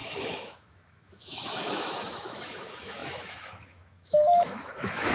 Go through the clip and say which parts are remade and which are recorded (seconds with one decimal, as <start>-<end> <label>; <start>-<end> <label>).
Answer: 0.0-5.1 remade